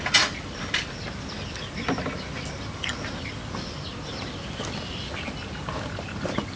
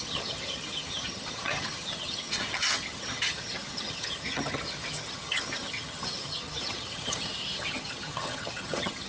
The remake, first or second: second